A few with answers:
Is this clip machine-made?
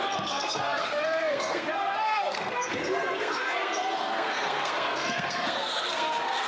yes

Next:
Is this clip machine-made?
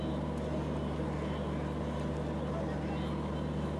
no